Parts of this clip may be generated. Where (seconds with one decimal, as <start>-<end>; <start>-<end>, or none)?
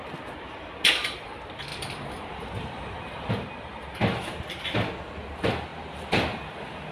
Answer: 1.7-3.3; 5.7-6.4